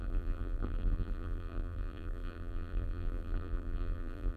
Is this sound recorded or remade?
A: remade